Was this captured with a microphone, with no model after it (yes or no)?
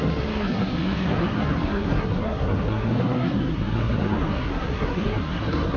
no